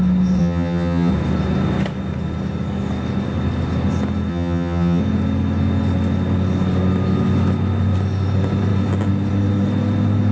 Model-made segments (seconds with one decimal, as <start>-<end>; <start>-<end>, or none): 0.4-1.1; 4.3-5.0